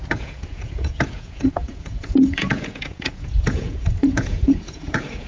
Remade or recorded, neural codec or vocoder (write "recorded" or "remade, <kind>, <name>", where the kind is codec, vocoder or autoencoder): remade, vocoder, Vocos